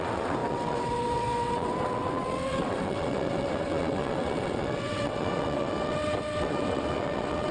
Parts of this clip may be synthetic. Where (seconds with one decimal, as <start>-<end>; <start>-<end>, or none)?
0.0-7.5